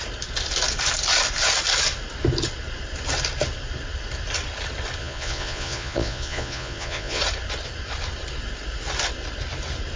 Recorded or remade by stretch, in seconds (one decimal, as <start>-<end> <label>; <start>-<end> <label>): 0.0-5.0 recorded; 5.0-7.2 remade; 7.2-10.0 recorded